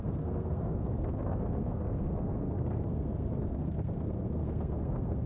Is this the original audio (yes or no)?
no